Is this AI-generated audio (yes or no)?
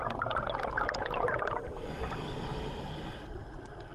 no